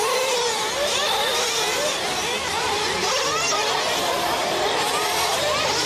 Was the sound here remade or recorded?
recorded